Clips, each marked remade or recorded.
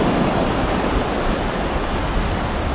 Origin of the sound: recorded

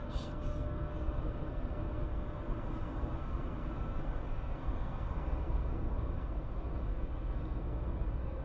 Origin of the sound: remade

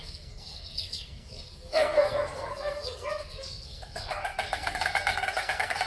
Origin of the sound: remade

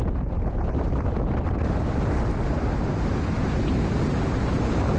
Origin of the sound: recorded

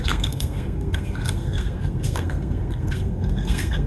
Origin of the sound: remade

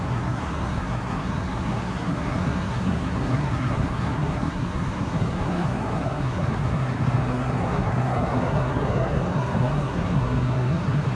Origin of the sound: remade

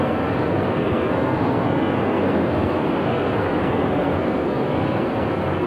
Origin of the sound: remade